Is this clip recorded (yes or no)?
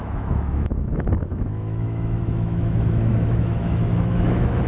no